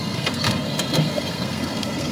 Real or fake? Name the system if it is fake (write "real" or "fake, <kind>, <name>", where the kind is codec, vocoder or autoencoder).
fake, codec, SNAC